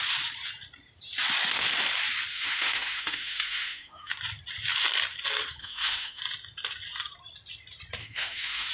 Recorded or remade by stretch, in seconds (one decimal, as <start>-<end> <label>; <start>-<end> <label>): 0.0-2.3 recorded; 2.3-4.1 remade; 4.1-5.6 recorded; 5.6-6.2 remade; 6.2-8.0 recorded; 8.0-8.7 remade

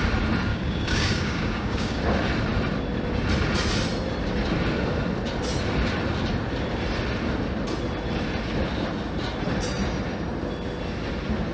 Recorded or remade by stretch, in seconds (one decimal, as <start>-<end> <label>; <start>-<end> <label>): 0.0-0.5 recorded; 0.5-2.0 remade; 2.0-11.5 recorded

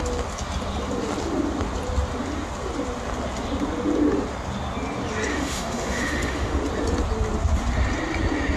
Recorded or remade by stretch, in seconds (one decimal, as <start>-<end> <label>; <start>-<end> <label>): 0.0-5.3 recorded; 5.3-6.6 remade; 6.6-8.6 recorded

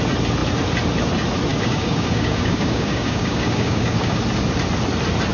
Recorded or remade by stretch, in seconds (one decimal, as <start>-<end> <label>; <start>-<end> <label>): 0.0-1.5 recorded; 1.5-4.2 remade; 4.2-5.3 recorded

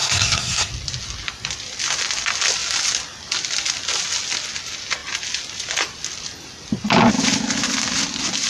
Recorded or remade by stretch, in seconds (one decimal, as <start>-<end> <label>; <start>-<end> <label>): 0.0-0.7 remade; 0.7-8.5 recorded

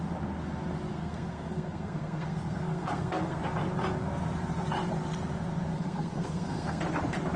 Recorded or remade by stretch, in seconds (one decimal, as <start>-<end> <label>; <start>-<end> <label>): 0.0-0.9 recorded; 0.9-3.4 remade; 3.4-5.7 recorded; 5.7-6.8 remade; 6.8-7.4 recorded

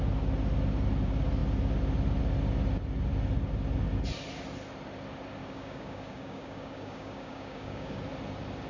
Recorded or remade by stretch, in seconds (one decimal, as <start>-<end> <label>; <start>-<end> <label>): 0.0-5.4 recorded; 5.4-8.0 remade; 8.0-8.7 recorded

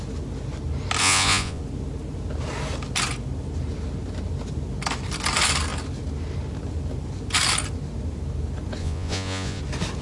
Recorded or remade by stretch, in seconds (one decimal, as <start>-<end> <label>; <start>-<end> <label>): 0.0-1.0 recorded; 1.0-1.6 remade; 1.6-8.8 recorded; 8.8-9.6 remade; 9.6-10.0 recorded